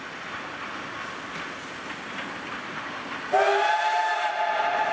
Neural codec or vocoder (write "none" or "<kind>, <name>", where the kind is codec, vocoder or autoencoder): none